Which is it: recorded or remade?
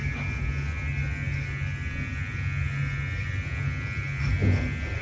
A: recorded